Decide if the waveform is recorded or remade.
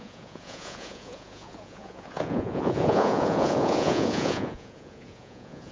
remade